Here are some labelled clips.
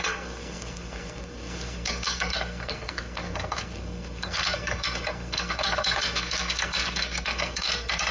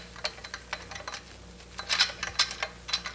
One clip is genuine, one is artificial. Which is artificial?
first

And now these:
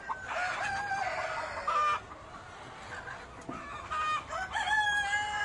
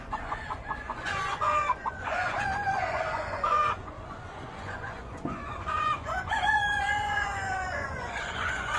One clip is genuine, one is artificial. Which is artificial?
second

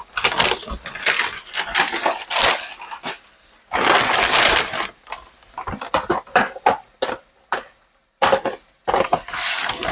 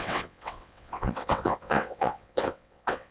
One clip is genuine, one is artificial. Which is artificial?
second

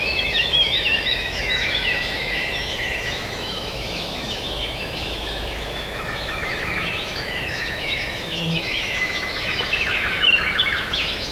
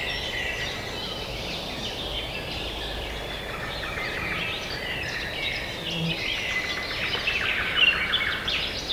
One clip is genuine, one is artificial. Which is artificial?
first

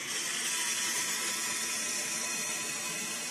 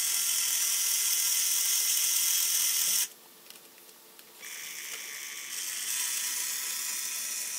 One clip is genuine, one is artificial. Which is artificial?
first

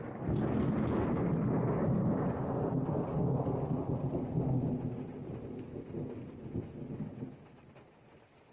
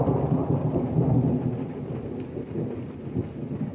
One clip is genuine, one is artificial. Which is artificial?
second